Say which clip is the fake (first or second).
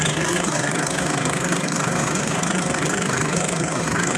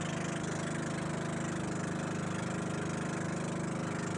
first